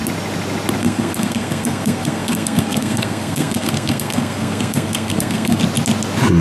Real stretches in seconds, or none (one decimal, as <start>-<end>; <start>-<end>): 0.0-0.8; 5.6-6.4

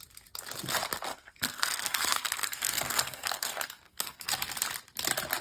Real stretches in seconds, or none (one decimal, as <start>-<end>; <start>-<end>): 0.0-1.1; 4.3-5.4

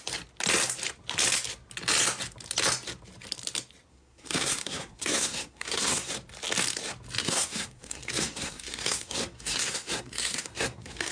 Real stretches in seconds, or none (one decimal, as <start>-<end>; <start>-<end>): 0.0-3.9; 6.1-7.2

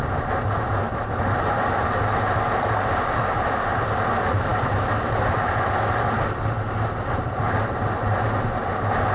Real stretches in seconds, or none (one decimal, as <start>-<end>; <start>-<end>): 0.0-9.1

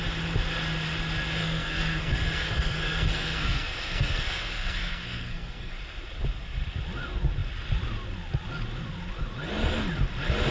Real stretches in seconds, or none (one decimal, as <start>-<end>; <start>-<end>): 0.0-1.4; 5.7-10.5

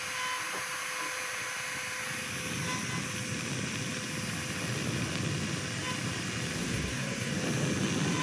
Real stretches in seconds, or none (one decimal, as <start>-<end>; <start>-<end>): 0.0-6.6; 7.3-8.2